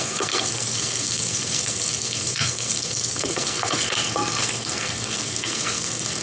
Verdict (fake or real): fake